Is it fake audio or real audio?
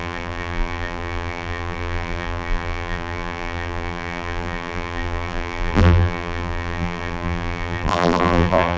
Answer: fake